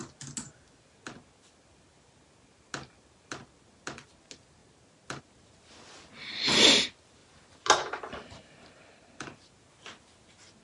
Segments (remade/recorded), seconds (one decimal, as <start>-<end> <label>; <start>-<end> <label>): 0.0-7.2 recorded; 7.2-8.8 remade; 8.8-10.6 recorded